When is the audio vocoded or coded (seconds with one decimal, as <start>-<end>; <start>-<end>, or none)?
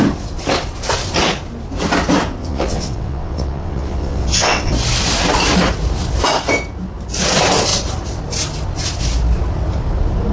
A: 2.4-4.7